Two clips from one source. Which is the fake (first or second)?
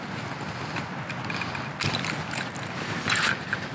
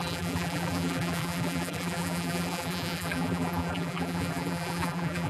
second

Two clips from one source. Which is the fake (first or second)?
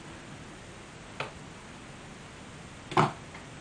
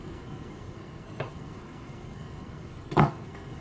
second